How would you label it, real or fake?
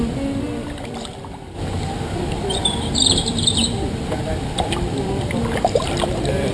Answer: fake